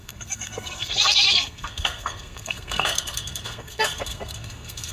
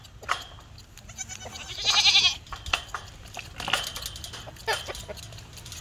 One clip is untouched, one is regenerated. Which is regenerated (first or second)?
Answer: first